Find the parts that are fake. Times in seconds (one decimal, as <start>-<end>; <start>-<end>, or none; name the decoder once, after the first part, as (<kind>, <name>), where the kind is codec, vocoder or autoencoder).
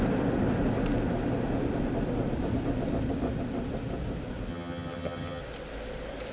4.5-5.4 (vocoder, HiFi-GAN)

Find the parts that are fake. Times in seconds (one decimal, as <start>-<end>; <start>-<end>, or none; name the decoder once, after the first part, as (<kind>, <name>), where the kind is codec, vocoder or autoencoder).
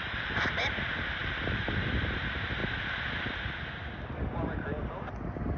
0.0-0.6 (vocoder, BigVGAN v2); 1.2-1.9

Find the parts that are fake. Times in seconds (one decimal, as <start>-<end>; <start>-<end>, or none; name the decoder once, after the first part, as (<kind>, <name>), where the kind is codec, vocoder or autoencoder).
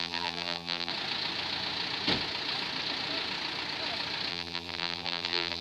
0.0-0.9 (vocoder, BigVGAN v2); 4.3-5.6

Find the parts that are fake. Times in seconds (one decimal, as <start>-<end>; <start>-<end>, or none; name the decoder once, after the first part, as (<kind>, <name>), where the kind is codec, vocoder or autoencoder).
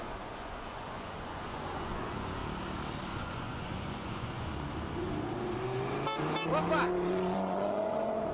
0.0-2.4 (vocoder, Vocos); 3.1-4.5; 7.1-8.3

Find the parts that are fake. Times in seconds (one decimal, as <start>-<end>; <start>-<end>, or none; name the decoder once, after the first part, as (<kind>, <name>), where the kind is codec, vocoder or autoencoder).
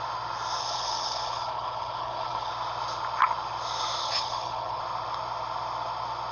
0.6-2.5 (codec, HILCodec); 4.0-4.8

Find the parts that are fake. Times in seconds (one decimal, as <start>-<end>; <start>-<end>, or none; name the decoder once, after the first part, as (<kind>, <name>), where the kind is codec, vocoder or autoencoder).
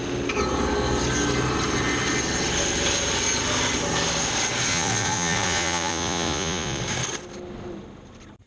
4.7-6.8 (vocoder, Vocos)